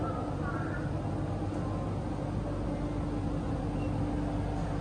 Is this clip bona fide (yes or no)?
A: yes